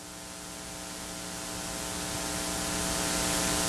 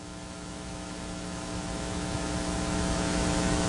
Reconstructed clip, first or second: second